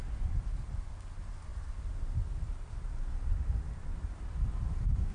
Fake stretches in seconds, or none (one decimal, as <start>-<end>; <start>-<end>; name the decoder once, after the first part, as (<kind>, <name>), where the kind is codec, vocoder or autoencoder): none